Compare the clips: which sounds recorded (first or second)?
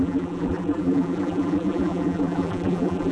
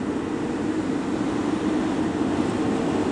second